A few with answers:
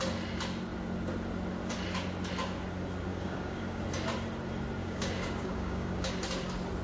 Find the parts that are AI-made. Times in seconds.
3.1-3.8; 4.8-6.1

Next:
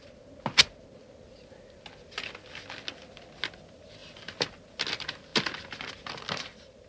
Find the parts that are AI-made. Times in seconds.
none

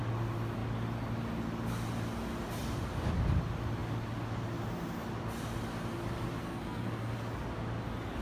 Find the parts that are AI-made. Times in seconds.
6.4-7.3

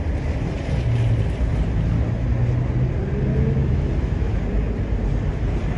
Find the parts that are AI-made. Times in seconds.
3.3-4.4

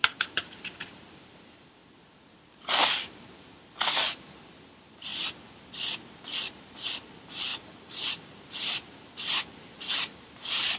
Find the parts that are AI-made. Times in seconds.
0.0-1.8; 3.2-5.1; 6.5-10.8

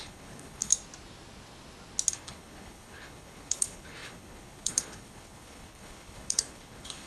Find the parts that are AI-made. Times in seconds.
0.0-0.7; 2.1-7.1